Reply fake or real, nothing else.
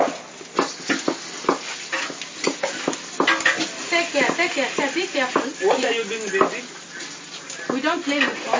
real